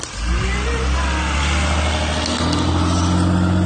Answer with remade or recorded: recorded